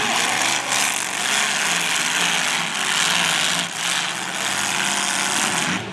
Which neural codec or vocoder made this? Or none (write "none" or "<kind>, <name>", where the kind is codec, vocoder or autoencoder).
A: none